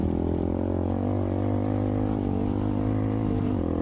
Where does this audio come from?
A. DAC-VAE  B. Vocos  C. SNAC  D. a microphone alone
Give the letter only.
D